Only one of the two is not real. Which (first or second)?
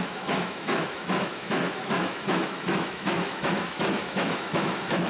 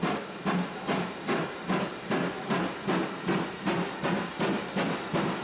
first